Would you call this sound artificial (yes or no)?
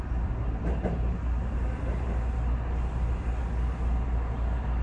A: no